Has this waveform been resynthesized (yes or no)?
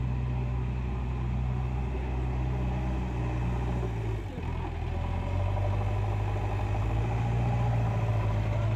no